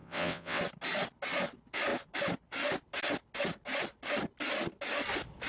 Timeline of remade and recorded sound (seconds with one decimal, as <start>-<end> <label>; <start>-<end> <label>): 0.0-0.6 remade; 0.6-5.5 recorded